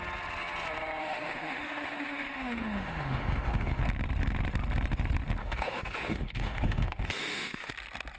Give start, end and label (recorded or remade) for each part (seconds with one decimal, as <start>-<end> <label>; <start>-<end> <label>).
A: 0.0-1.0 recorded; 1.0-3.8 remade; 3.8-5.4 recorded; 5.4-7.7 remade; 7.7-8.2 recorded